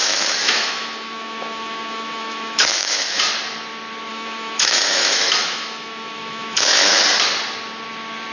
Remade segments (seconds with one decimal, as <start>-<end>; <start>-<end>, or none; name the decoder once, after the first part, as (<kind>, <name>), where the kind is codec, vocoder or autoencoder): 0.0-3.3 (autoencoder, DAC-VAE); 4.1-6.9